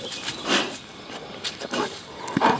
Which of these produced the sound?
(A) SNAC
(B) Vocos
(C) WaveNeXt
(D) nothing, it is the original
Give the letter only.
D